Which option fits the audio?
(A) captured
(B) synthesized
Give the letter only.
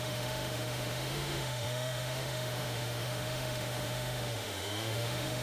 B